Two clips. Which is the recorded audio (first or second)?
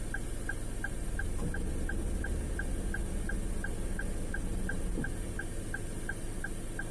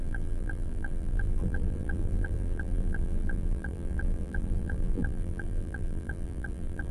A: first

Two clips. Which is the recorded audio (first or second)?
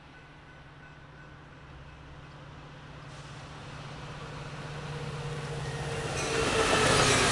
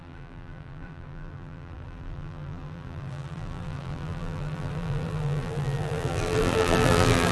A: first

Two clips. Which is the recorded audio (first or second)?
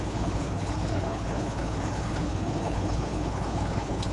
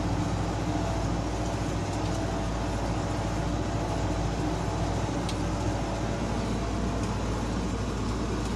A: second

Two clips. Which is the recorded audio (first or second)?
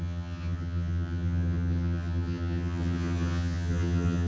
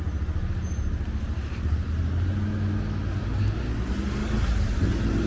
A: second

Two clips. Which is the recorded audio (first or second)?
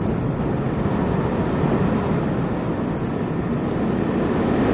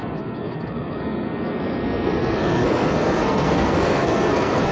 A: first